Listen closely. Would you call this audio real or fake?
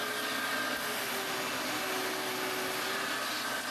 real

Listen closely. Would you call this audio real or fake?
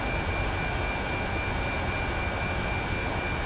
real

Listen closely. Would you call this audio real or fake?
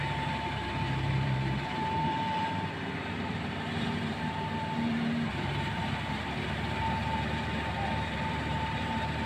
fake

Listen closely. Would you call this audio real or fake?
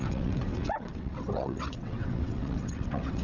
fake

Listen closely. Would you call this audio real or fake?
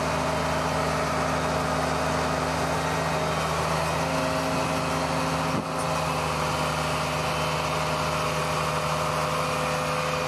real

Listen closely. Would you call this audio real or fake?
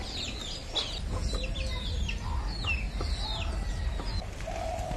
real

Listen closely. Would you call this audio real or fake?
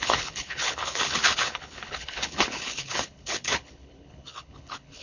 fake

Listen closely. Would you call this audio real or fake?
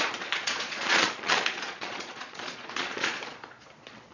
fake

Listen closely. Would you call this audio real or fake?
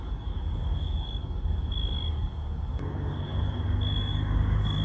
fake